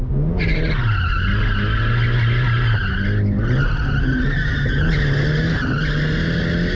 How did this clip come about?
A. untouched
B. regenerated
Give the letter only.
A